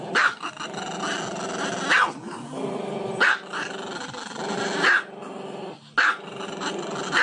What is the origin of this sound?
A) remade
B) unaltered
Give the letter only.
B